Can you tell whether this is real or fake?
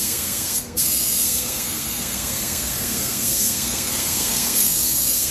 fake